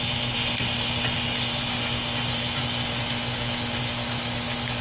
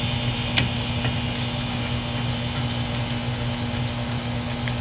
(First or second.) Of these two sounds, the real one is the second